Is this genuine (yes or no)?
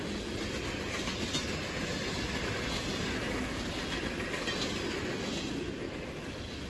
yes